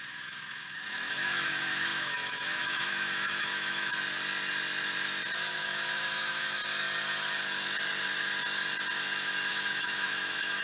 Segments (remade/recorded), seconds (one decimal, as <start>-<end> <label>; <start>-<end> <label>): 0.0-3.9 remade; 3.9-5.5 recorded; 5.5-6.6 remade; 6.6-9.5 recorded; 9.5-10.6 remade